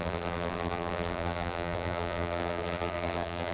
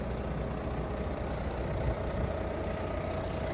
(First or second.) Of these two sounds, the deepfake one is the first